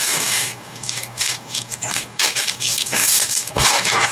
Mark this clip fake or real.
fake